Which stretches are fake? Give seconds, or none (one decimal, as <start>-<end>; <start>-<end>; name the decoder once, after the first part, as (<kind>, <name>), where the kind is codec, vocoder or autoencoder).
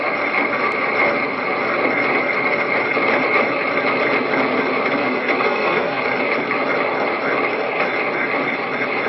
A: 5.0-6.0 (codec, SNAC)